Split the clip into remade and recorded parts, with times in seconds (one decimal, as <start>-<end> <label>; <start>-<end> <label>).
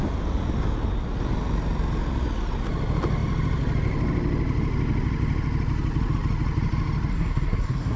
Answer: 0.0-7.1 recorded; 7.1-8.0 remade